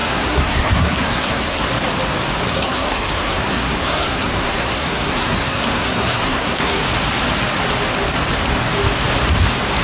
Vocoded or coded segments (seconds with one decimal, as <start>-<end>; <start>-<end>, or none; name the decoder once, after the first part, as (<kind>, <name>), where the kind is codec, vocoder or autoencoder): 0.0-1.7 (codec, SNAC); 2.5-6.8